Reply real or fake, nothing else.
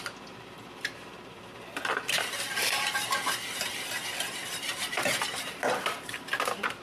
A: fake